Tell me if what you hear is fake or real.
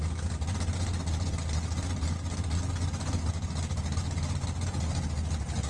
real